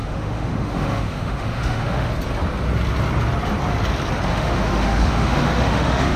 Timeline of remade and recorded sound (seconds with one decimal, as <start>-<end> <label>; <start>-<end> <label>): 0.0-2.1 remade; 2.1-4.3 recorded; 4.3-6.2 remade